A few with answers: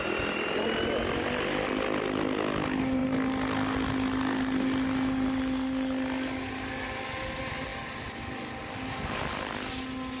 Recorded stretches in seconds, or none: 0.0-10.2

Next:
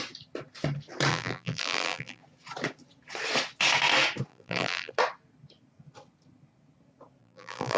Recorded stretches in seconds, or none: 0.0-1.1; 2.2-4.3; 4.9-7.2

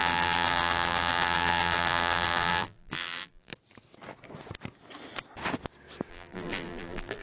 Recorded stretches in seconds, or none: 3.5-6.1

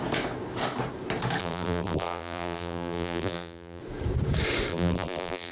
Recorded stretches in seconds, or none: 0.0-1.4; 3.8-4.7

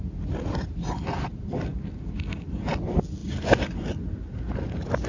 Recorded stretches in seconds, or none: 0.0-3.2; 4.0-5.1

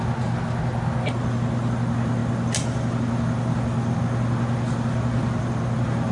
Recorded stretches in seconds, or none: 0.0-6.1